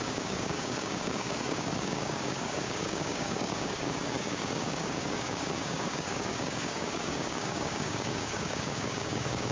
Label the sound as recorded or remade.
remade